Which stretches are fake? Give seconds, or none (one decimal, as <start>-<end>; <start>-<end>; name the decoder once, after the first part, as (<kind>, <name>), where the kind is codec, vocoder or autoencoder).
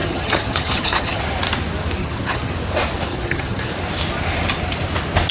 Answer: 0.0-1.2 (vocoder, HiFi-GAN); 2.0-2.5; 3.1-3.7